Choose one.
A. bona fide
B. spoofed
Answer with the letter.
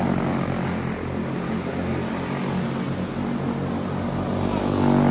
A